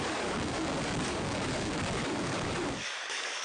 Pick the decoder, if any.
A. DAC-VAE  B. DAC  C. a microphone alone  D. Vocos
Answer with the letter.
B